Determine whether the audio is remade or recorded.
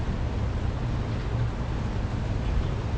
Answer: recorded